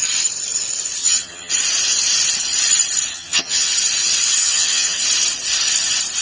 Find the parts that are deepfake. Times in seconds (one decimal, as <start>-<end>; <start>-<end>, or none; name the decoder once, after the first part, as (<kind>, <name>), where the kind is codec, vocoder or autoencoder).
1.0-1.5 (vocoder, HiFi-GAN); 3.1-3.7; 4.4-5.0